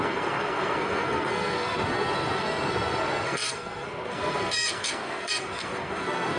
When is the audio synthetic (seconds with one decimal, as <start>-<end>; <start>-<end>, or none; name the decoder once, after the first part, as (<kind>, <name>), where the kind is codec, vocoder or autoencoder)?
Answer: 0.0-6.4 (codec, SNAC)